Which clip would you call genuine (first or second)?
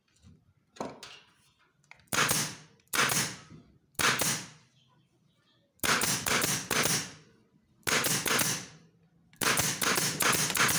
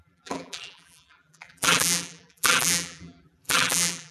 first